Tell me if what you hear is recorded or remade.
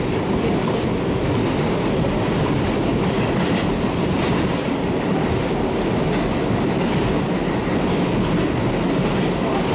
recorded